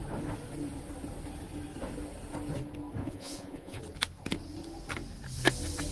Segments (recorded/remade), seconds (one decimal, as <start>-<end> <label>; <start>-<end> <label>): 0.0-3.0 recorded; 3.0-3.8 remade; 3.8-5.9 recorded